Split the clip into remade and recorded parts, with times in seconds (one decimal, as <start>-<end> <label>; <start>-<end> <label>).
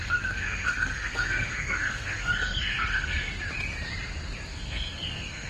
0.0-3.3 remade; 3.3-4.5 recorded; 4.5-5.5 remade